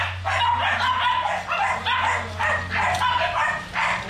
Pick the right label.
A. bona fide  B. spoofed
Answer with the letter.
A